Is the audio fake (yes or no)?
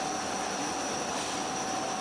no